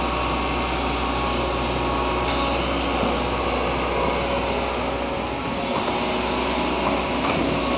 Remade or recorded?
recorded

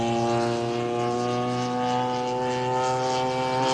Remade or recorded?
recorded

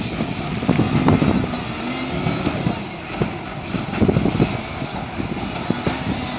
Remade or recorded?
recorded